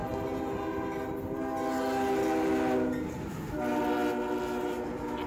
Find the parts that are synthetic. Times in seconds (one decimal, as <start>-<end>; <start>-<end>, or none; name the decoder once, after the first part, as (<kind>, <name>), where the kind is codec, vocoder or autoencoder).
none